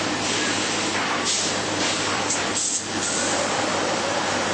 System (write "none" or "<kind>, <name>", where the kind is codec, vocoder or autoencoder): vocoder, BigVGAN v2